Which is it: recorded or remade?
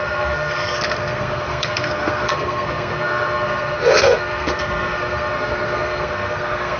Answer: remade